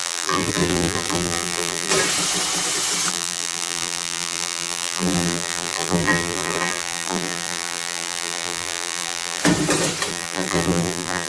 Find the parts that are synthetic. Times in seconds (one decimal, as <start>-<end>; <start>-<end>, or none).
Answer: 0.0-1.9; 3.1-9.4; 10.1-11.3

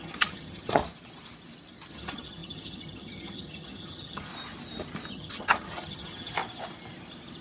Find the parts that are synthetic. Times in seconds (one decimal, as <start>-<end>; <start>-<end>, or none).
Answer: 0.0-0.8; 1.9-4.3; 5.1-6.4

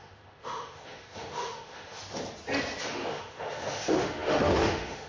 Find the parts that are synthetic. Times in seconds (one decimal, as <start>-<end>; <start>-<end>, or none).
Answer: 0.0-2.0; 2.8-5.1

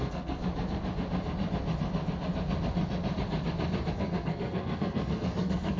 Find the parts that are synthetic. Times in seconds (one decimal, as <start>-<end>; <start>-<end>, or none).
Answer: 0.0-0.4; 3.9-5.8